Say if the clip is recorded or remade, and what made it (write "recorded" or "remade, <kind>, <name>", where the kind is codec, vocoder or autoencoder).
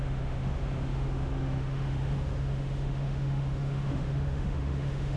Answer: remade, autoencoder, DAC-VAE